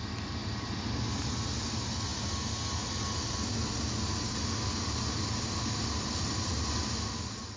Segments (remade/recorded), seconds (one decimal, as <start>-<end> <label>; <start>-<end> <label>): 0.0-7.6 recorded